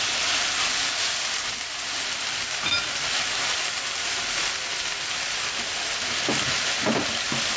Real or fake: real